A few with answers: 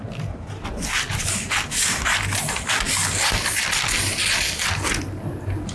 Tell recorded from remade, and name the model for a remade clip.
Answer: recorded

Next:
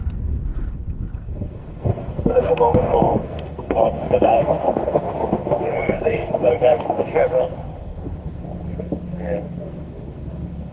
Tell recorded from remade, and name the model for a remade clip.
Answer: remade, codec, SNAC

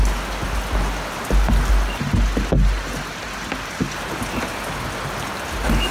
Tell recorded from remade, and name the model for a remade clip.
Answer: recorded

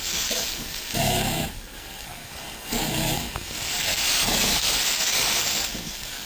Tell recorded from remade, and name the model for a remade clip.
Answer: remade, codec, SNAC